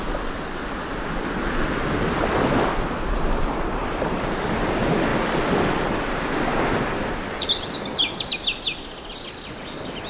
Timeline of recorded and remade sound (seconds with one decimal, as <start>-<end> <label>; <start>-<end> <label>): 0.0-10.1 recorded

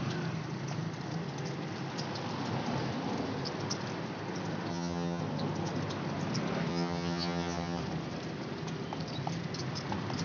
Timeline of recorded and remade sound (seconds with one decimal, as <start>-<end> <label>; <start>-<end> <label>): 0.0-4.7 recorded; 4.7-5.2 remade; 5.2-6.7 recorded; 6.7-7.8 remade; 7.8-10.2 recorded

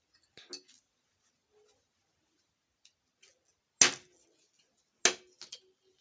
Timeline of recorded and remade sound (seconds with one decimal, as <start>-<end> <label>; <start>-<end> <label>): 0.0-6.0 recorded

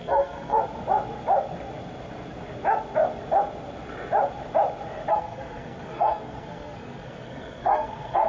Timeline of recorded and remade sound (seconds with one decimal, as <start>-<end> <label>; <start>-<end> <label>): 0.0-0.6 remade; 0.6-5.1 recorded; 5.1-8.3 remade

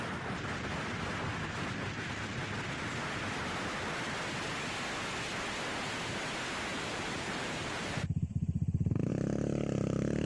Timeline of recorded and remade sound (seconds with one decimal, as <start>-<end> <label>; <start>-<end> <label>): 0.0-6.7 recorded; 6.7-9.1 remade; 9.1-10.2 recorded

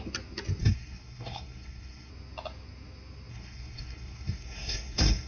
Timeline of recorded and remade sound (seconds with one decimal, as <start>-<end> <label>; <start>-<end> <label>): 0.0-0.6 recorded; 0.6-2.1 remade; 2.1-3.3 recorded; 3.3-5.3 remade